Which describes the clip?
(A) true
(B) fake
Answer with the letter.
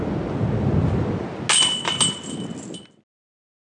A